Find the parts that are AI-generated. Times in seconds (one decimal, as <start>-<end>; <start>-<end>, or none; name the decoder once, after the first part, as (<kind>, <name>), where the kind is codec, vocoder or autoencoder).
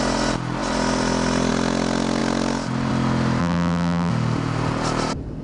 3.4-4.1 (vocoder, BigVGAN v2)